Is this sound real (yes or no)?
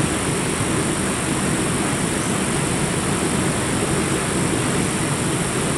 yes